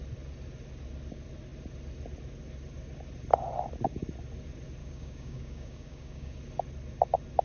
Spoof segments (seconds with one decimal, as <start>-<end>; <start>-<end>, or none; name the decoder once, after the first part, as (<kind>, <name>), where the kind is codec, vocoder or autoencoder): 4.8-6.4 (codec, DAC)